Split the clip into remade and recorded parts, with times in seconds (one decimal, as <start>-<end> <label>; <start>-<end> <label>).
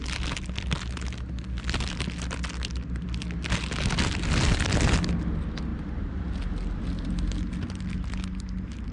0.0-8.9 recorded